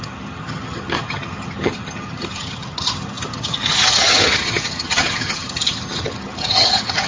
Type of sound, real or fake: fake